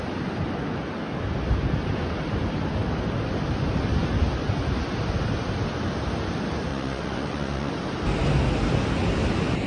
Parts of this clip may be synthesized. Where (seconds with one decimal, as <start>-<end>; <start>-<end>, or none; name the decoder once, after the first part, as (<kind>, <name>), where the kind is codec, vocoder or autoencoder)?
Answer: 6.7-7.7 (vocoder, Vocos)